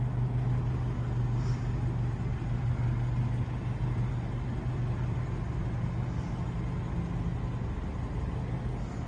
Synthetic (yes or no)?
no